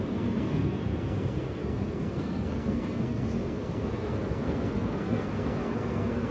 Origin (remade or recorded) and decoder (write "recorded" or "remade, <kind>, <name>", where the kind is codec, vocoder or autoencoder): remade, codec, SNAC